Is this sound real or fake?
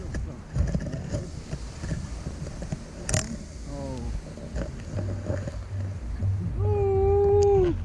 real